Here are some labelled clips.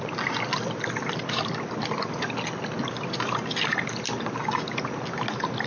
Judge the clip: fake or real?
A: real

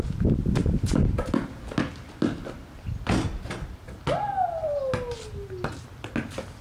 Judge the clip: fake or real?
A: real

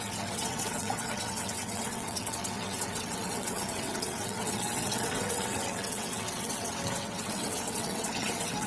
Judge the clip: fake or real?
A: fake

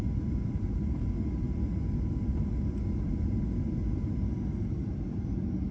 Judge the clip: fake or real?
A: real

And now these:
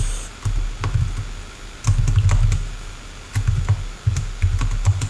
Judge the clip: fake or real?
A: real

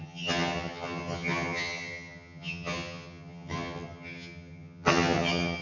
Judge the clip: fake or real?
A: fake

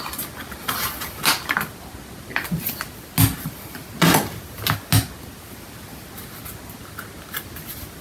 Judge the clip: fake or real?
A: real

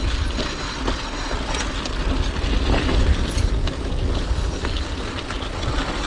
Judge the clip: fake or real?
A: real